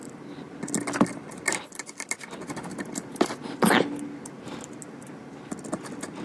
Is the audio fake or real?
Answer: real